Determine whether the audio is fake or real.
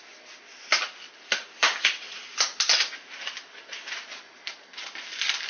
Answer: real